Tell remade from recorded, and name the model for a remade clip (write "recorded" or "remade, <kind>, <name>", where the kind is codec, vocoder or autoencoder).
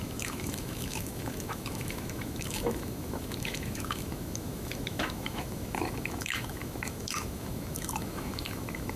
remade, autoencoder, DAC-VAE